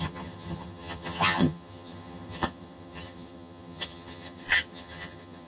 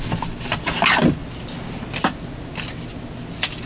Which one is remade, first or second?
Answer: first